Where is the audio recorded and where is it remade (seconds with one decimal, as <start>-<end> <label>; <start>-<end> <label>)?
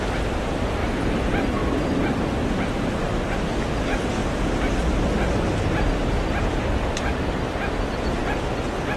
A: 0.0-0.8 remade; 0.8-1.3 recorded; 1.3-4.2 remade; 4.2-6.4 recorded; 6.4-8.2 remade; 8.2-9.0 recorded